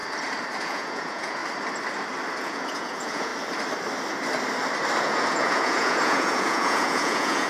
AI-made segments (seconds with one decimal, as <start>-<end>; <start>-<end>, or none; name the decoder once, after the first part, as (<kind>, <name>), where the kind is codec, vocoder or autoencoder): 0.6-1.4 (vocoder, Vocos); 2.4-3.3; 5.0-7.5